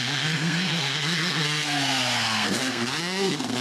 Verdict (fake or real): fake